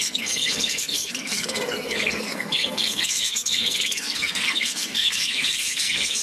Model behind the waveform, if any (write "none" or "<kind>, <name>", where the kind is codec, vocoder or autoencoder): codec, SNAC